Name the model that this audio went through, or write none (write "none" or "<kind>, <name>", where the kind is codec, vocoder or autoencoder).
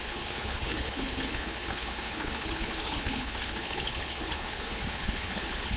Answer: codec, HILCodec